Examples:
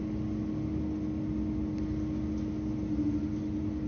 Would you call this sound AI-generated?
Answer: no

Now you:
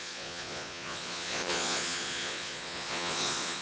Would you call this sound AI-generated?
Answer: yes